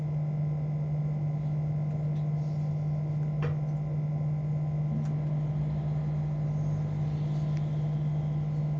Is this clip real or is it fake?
real